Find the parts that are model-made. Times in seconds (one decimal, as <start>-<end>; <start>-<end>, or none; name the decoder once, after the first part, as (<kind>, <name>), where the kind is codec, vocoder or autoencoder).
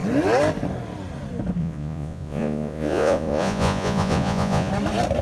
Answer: 1.6-4.7 (vocoder, Vocos)